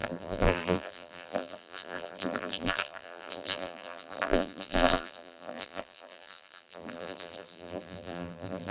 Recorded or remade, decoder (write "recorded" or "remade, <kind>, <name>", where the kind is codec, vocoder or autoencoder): remade, vocoder, BigVGAN v2